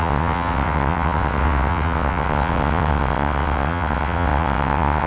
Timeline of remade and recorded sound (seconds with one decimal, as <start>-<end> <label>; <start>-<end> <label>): 0.0-5.1 remade